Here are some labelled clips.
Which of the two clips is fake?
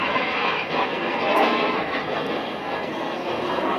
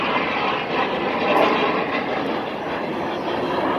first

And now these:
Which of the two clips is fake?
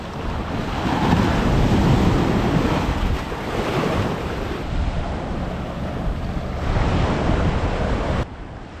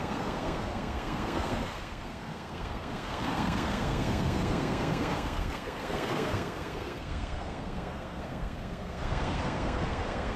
second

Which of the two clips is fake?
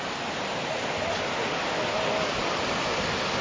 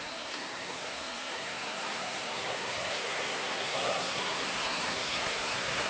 second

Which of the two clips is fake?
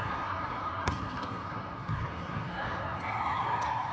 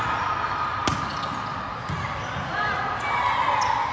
first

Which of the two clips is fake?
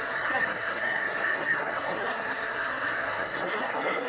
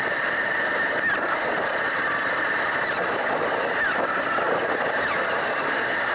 first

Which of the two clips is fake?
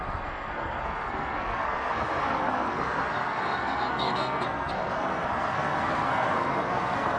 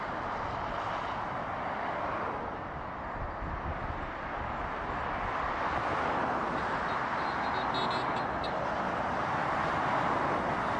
first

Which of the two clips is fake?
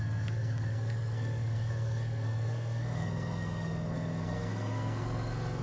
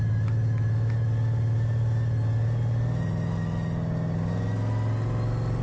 first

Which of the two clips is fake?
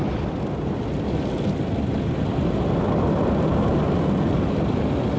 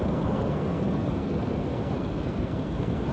second